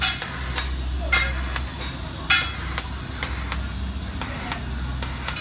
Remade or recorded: recorded